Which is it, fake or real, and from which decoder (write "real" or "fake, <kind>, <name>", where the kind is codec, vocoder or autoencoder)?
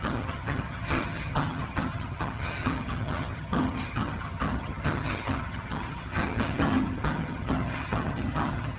fake, vocoder, HiFi-GAN